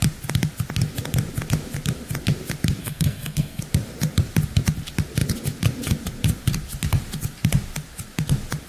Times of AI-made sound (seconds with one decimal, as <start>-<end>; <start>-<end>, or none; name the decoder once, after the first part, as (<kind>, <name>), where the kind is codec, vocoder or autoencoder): 2.8-3.6 (codec, SNAC)